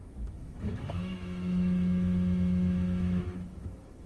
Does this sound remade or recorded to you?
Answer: remade